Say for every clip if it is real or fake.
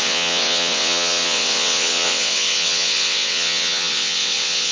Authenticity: fake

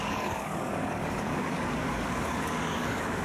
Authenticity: fake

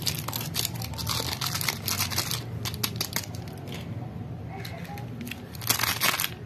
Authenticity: real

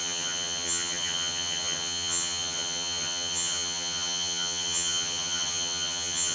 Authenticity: fake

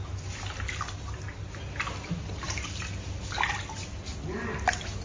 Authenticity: real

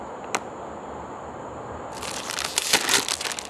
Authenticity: real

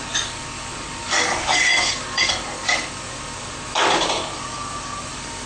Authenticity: fake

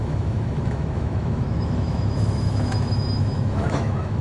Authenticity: fake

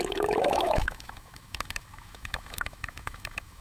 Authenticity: fake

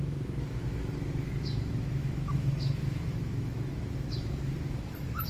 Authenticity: fake